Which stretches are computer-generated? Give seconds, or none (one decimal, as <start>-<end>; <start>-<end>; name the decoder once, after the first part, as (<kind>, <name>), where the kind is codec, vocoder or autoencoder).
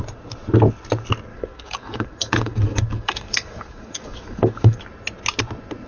1.3-4.8 (codec, DAC)